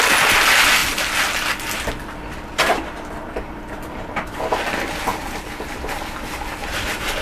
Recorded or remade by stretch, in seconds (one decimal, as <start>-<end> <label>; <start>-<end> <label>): 0.0-7.2 recorded